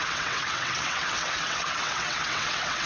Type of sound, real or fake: fake